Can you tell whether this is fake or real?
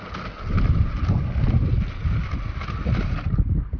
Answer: real